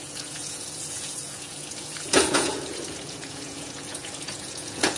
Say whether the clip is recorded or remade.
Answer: remade